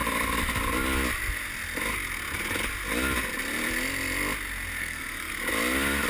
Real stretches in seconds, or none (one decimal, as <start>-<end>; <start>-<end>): 0.0-4.8; 5.3-6.1